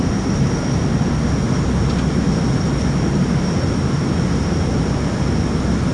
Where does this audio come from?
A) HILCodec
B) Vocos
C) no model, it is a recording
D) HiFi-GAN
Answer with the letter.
C